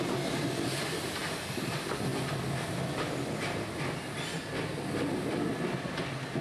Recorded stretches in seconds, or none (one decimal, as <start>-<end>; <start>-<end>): 0.0-6.4